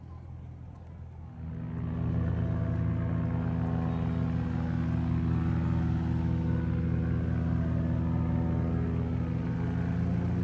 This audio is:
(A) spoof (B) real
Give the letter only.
B